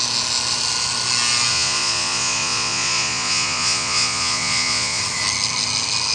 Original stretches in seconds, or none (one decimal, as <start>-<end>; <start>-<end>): 0.0-1.5; 5.0-6.1